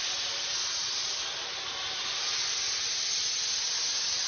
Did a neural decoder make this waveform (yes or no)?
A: no